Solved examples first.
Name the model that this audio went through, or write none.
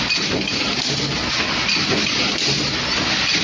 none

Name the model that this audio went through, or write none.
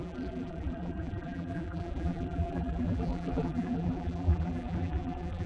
vocoder, BigVGAN v2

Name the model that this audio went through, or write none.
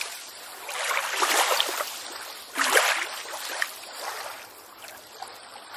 vocoder, BigVGAN v2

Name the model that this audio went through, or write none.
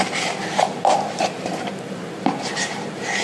vocoder, BigVGAN v2